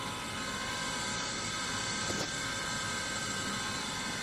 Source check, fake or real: fake